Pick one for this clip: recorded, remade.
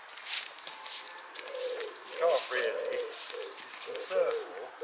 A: recorded